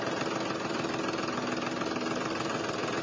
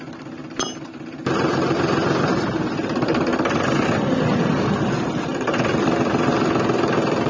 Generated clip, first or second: second